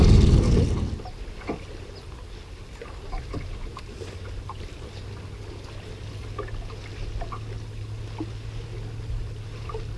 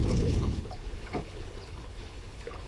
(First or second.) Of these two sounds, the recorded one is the first